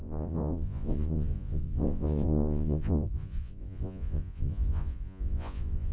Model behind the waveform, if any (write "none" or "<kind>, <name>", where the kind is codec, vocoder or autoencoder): vocoder, Vocos